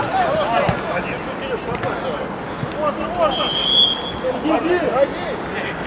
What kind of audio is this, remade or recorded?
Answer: recorded